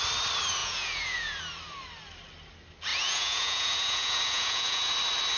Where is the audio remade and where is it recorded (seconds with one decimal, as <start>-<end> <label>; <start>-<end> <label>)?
0.0-0.6 recorded; 0.6-1.4 remade; 1.4-2.9 recorded; 2.9-4.9 remade; 4.9-5.4 recorded